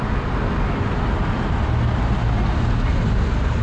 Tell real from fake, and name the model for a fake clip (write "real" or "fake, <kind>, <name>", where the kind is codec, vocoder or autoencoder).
real